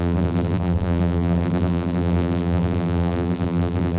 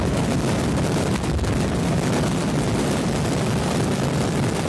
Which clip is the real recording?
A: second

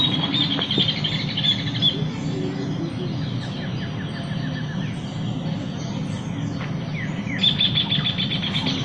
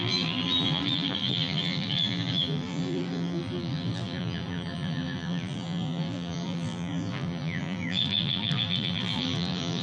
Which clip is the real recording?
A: first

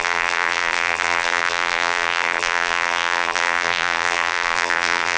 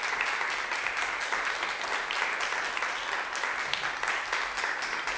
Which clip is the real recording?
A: second